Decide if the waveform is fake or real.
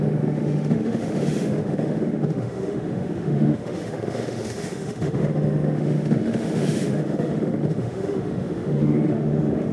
fake